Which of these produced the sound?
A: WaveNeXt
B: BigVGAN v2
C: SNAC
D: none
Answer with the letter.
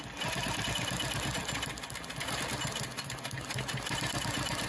D